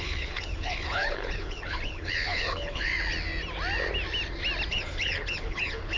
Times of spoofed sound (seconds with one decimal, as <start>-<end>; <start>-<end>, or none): 0.0-2.9; 4.7-6.0